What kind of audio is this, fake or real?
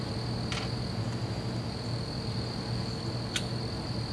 real